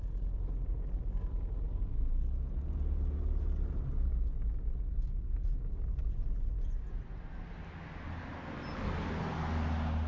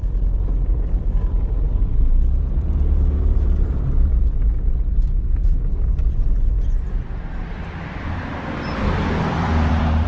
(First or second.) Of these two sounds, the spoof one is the second